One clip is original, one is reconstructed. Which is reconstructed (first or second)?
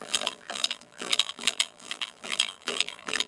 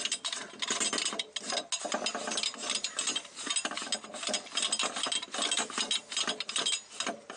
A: first